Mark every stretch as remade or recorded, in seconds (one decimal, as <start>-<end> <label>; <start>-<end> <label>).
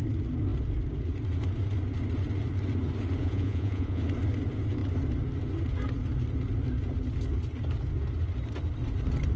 0.0-3.2 recorded; 3.2-4.0 remade; 4.0-9.4 recorded